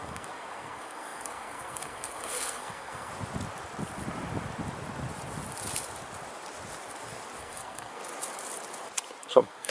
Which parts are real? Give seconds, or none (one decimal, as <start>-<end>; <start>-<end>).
3.1-7.4; 8.0-9.2